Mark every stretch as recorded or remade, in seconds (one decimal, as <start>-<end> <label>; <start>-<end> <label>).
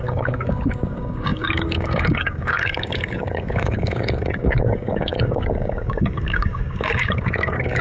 0.0-7.8 remade